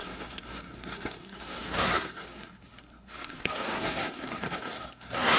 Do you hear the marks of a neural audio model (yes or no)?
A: yes